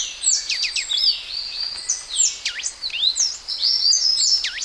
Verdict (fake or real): real